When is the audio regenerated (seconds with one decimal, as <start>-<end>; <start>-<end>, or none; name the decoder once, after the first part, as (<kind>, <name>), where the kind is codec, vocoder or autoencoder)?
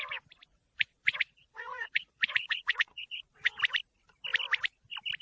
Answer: 0.5-3.6 (vocoder, Vocos)